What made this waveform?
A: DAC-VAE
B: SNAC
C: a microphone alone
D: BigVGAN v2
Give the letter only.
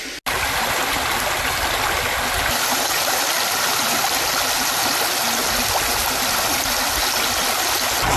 C